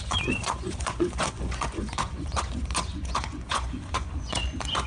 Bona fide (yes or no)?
no